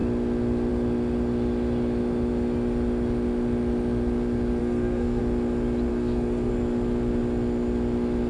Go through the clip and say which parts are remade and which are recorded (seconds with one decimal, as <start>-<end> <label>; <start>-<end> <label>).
0.0-4.6 recorded; 4.6-5.2 remade; 5.2-5.9 recorded; 5.9-6.5 remade; 6.5-8.3 recorded